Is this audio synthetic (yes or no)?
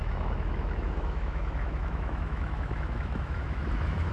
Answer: yes